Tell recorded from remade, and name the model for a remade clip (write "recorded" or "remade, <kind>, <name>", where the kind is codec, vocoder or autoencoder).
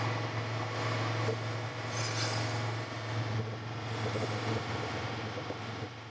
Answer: recorded